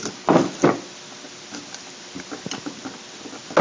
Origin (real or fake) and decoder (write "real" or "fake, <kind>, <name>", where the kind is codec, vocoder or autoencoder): real